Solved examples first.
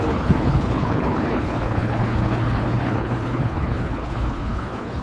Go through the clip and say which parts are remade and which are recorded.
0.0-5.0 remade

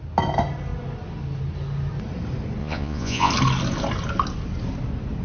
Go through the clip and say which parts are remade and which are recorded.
0.0-2.6 recorded; 2.6-3.3 remade; 3.3-5.2 recorded

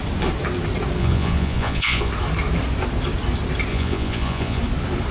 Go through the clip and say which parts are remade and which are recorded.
0.0-1.0 recorded; 1.0-2.1 remade; 2.1-3.7 recorded; 3.7-4.6 remade; 4.6-5.1 recorded